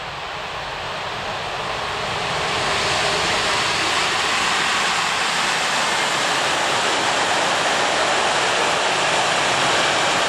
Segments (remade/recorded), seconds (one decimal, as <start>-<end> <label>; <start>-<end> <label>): 0.0-10.3 recorded